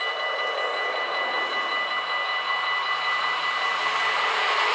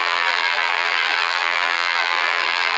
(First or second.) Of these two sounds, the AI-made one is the second